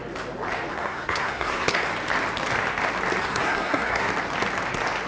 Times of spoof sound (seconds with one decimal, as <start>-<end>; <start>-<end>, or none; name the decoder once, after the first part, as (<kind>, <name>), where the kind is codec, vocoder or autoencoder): 0.7-1.9 (codec, SNAC); 3.2-4.1